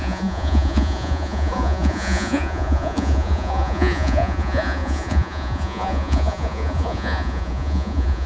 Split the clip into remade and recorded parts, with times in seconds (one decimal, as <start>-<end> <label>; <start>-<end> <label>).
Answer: 0.0-8.3 remade